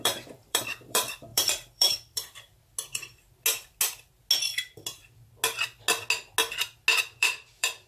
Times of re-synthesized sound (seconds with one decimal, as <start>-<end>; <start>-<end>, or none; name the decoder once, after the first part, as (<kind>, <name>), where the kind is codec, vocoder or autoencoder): 0.0-2.5 (vocoder, BigVGAN v2); 7.2-7.9